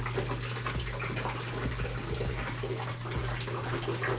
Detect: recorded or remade recorded